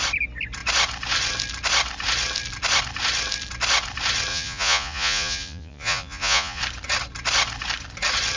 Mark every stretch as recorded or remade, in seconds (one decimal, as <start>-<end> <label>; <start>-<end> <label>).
0.0-4.3 recorded; 4.3-6.6 remade; 6.6-8.4 recorded